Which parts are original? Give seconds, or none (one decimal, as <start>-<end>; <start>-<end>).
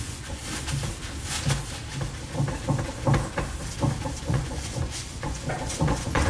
0.4-4.2